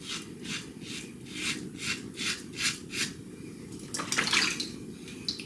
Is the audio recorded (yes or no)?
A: yes